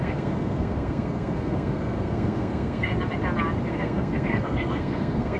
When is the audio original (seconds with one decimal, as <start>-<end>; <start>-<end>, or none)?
2.9-3.7